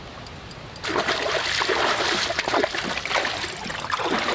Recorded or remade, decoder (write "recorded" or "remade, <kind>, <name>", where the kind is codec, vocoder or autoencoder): recorded